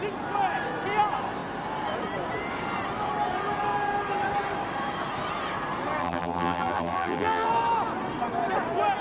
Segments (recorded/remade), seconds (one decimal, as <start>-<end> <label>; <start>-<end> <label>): 0.0-6.0 recorded; 6.0-7.5 remade; 7.5-9.0 recorded